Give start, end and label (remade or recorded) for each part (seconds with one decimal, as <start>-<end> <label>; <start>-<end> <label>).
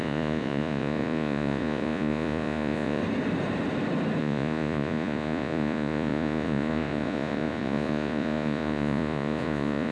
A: 0.0-3.0 remade; 3.0-4.2 recorded; 4.2-9.9 remade